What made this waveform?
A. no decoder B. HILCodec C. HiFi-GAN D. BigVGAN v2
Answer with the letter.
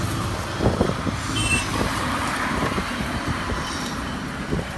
D